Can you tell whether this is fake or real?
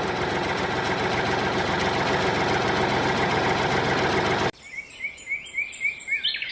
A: real